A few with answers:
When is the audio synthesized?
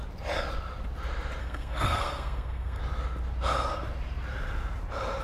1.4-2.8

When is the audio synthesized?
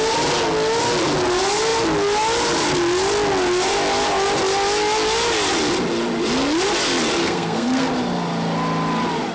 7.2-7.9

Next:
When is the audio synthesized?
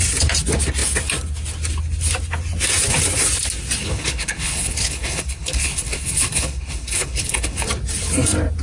3.8-7.7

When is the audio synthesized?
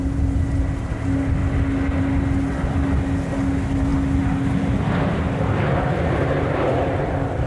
none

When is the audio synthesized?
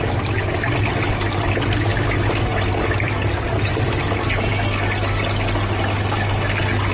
none